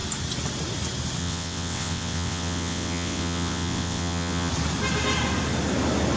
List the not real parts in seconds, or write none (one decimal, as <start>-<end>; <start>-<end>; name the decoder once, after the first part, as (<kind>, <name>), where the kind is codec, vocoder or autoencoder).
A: 1.2-4.5 (vocoder, WaveNeXt)